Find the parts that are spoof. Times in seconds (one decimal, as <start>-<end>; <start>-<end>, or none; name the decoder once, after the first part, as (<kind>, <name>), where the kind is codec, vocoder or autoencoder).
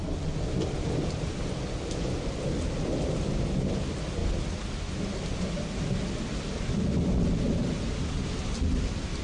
none